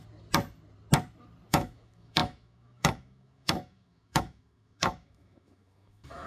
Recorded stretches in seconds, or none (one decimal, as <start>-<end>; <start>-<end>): 0.0-1.5